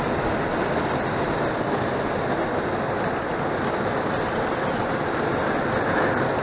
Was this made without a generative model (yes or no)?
yes